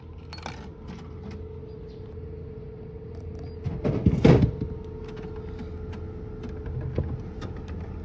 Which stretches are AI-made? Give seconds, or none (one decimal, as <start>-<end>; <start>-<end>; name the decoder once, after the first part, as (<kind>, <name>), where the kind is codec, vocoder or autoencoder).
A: none